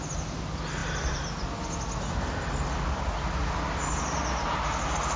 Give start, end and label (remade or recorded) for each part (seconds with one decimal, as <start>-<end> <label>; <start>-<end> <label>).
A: 0.0-5.2 recorded